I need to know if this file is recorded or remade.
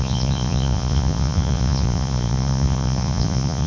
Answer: remade